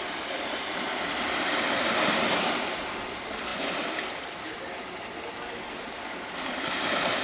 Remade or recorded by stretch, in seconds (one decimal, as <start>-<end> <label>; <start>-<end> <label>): 0.0-7.2 recorded